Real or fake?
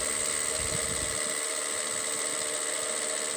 real